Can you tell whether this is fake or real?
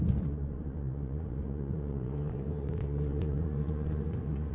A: fake